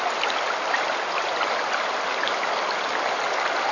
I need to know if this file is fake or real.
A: real